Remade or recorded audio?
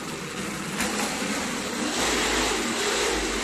recorded